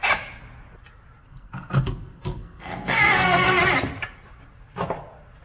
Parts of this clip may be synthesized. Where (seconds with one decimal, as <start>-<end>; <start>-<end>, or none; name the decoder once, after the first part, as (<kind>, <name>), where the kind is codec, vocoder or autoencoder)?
1.2-3.6 (codec, SNAC)